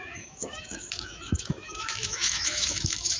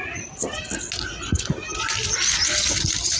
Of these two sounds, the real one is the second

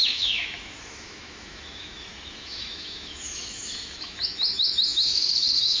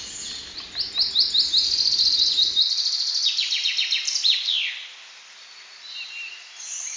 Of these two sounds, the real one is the second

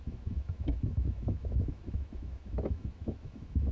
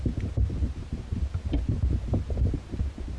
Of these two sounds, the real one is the second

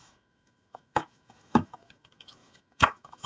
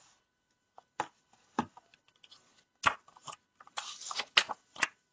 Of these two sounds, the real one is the second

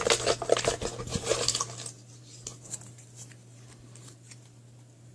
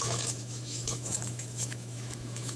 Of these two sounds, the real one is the first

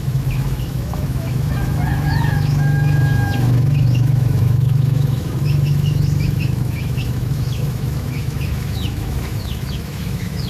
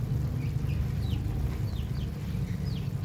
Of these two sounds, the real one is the second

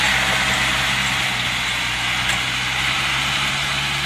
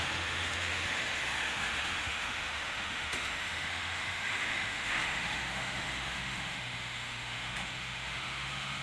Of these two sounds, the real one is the first